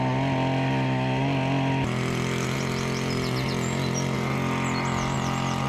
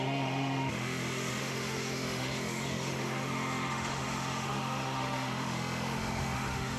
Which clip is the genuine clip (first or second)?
first